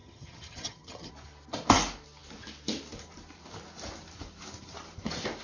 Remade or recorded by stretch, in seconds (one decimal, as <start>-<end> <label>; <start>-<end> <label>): 0.0-1.1 remade; 1.1-5.4 recorded